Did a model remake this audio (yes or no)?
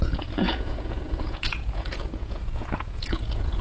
yes